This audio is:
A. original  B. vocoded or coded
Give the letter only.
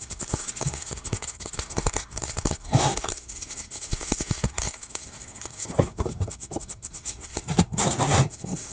B